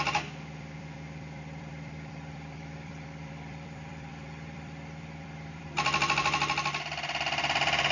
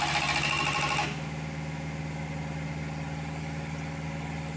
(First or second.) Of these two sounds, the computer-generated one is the first